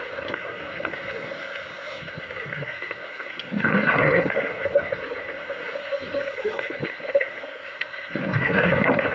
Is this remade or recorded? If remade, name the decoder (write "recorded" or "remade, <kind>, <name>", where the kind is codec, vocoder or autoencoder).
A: remade, codec, SNAC